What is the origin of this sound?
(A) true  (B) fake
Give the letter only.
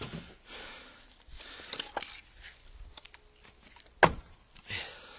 A